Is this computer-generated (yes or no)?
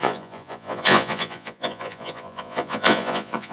yes